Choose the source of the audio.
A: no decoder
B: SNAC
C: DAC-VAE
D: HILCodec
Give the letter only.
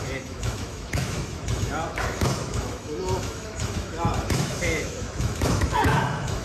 C